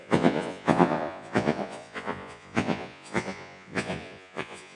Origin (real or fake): fake